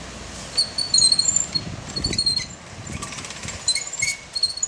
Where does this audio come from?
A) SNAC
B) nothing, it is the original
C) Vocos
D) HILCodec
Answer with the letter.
B